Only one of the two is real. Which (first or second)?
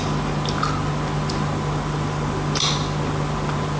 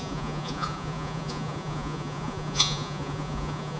first